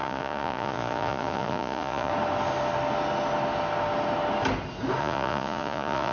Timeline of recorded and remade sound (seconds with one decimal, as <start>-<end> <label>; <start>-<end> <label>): 0.0-2.1 remade; 2.1-5.0 recorded; 5.0-6.1 remade